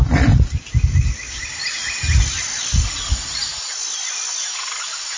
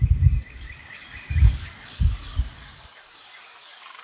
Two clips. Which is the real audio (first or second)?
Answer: first